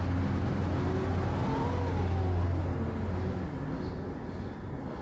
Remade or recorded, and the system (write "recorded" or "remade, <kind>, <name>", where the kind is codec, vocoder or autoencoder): recorded